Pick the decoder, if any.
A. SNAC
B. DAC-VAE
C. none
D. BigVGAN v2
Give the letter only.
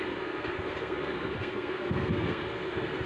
A